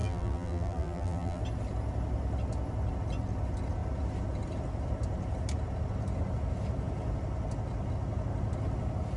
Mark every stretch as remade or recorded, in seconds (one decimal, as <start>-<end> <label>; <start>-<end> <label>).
0.0-1.4 remade; 1.4-9.2 recorded